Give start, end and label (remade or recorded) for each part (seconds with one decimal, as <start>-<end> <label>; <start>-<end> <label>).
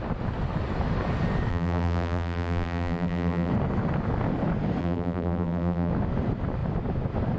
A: 0.0-1.5 recorded; 1.5-3.5 remade; 3.5-4.8 recorded; 4.8-5.9 remade; 5.9-7.4 recorded